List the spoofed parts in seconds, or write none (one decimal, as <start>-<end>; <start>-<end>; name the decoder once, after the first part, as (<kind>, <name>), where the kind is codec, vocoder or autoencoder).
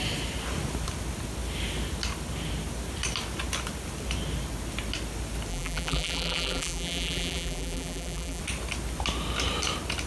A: 5.5-8.4 (vocoder, BigVGAN v2)